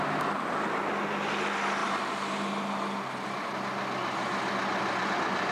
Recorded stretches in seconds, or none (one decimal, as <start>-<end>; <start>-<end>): 0.0-5.5